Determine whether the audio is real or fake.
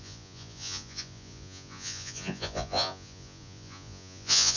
fake